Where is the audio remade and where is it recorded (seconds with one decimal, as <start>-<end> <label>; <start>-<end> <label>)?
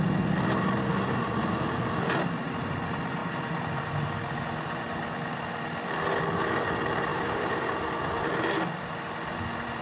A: 0.0-0.9 recorded; 0.9-1.8 remade; 1.8-3.2 recorded; 3.2-3.9 remade; 3.9-7.1 recorded; 7.1-8.3 remade; 8.3-9.8 recorded